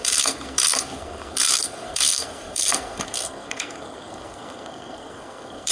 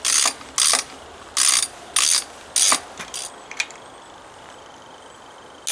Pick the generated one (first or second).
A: first